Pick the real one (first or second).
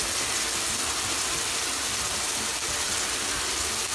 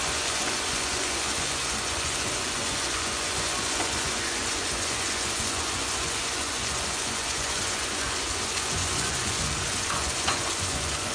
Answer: first